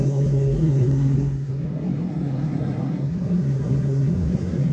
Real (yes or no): no